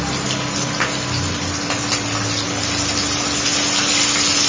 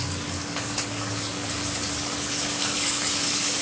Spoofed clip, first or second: second